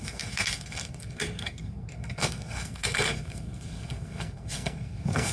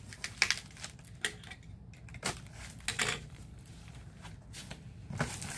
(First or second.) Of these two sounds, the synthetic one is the first